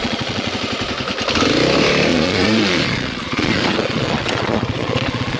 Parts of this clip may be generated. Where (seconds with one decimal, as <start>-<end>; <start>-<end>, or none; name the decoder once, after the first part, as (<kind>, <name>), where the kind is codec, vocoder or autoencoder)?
0.0-0.5 (vocoder, Vocos); 2.1-5.4